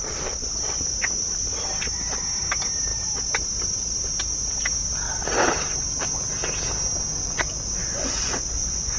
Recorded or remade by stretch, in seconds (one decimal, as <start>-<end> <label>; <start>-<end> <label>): 0.0-7.8 recorded; 7.8-9.0 remade